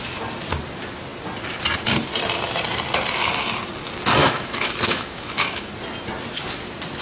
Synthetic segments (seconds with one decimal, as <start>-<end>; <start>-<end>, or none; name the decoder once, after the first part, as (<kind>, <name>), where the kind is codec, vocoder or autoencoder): 4.2-5.7 (autoencoder, DAC-VAE)